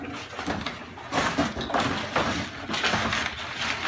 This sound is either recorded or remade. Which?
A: recorded